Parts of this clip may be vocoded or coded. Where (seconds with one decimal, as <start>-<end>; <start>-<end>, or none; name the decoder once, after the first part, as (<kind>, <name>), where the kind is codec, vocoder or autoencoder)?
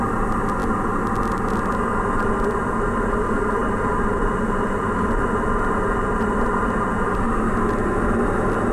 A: none